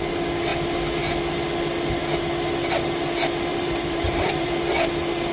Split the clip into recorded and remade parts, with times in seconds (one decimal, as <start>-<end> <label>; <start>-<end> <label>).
0.0-3.5 recorded; 3.5-4.5 remade; 4.5-5.3 recorded